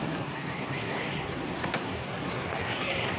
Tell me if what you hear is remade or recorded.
remade